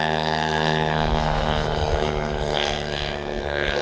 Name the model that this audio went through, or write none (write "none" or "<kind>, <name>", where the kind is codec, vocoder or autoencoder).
codec, SNAC